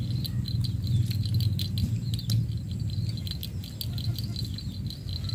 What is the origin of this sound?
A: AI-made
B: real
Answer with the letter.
B